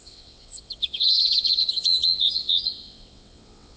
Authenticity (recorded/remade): remade